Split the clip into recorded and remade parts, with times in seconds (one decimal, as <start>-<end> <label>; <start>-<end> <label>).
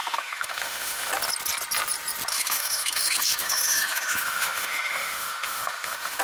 0.0-1.1 remade; 1.1-2.3 recorded; 2.3-6.2 remade